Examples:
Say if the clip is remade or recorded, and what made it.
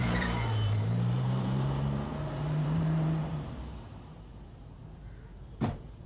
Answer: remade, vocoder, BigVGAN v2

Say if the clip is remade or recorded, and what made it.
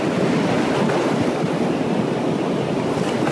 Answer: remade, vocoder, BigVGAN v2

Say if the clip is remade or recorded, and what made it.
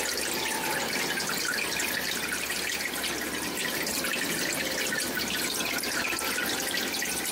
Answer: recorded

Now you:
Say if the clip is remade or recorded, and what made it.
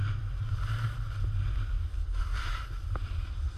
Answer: recorded